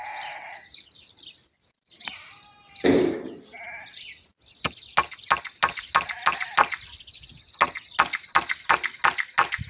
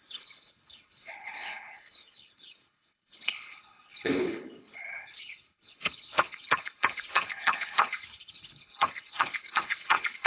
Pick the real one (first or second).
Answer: first